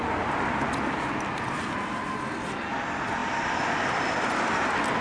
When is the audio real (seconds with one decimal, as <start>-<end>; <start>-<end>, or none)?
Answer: 0.0-5.0